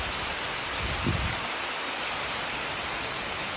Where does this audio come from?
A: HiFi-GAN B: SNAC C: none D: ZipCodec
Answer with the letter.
C